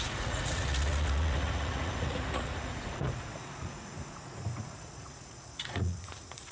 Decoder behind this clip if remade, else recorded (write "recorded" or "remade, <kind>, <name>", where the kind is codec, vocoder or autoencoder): remade, vocoder, Vocos